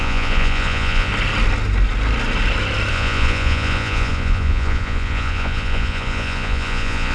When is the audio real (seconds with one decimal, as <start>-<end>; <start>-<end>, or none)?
1.1-2.9